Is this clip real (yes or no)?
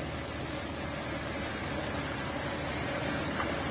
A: yes